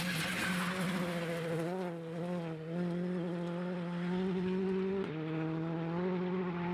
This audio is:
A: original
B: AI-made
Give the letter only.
A